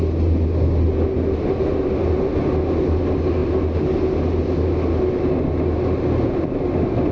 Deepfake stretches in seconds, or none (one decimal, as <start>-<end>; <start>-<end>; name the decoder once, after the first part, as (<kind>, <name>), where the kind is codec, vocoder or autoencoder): none